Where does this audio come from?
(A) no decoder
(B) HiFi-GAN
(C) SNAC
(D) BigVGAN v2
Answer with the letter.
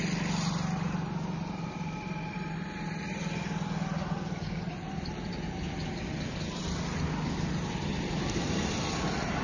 A